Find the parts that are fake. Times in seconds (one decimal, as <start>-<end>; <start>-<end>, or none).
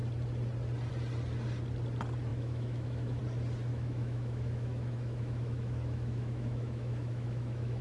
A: 2.3-3.2; 3.7-7.8